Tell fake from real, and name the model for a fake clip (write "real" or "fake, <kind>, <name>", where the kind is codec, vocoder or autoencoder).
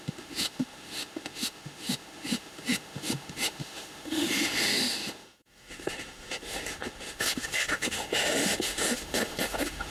fake, autoencoder, DAC-VAE